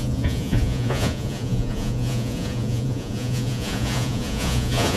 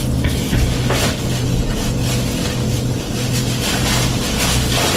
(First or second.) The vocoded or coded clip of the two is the first